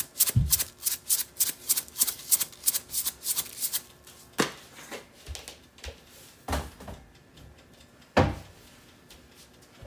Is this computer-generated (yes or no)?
no